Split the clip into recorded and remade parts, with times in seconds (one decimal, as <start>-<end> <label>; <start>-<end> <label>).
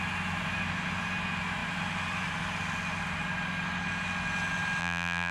0.0-4.8 recorded; 4.8-5.3 remade